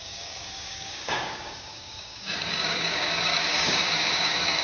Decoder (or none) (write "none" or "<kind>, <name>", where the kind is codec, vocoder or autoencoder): codec, DAC